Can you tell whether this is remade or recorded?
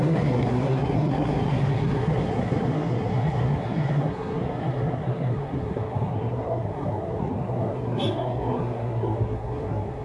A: remade